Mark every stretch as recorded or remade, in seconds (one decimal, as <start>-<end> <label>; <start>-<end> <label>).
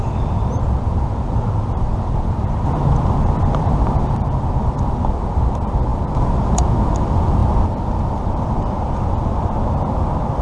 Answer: 0.0-7.4 remade; 7.4-8.1 recorded; 8.1-10.4 remade